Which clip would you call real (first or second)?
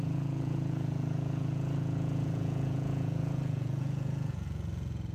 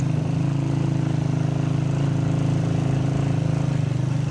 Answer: second